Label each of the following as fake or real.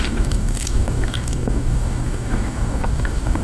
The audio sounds fake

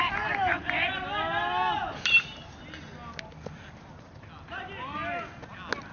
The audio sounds real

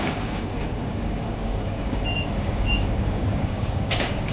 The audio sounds fake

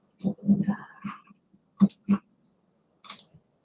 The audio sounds real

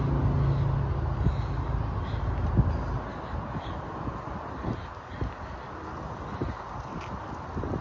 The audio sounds real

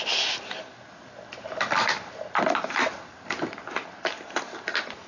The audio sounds real